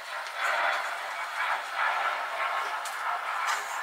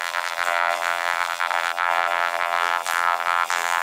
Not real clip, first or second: second